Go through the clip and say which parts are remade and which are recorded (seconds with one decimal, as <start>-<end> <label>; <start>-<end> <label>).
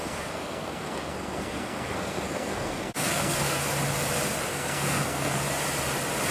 0.0-3.6 remade; 3.6-4.5 recorded; 4.5-5.4 remade; 5.4-6.3 recorded